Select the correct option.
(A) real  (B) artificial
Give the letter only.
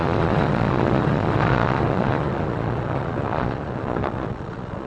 B